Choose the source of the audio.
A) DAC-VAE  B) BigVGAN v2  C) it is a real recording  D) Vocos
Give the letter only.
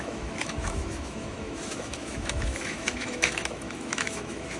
A